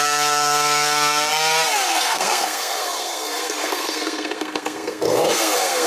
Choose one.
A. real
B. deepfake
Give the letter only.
B